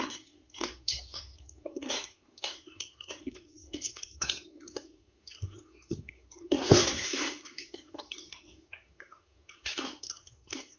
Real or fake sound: fake